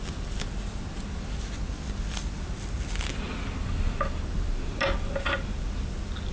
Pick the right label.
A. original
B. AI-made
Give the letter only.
A